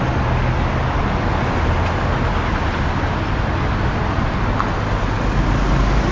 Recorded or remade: recorded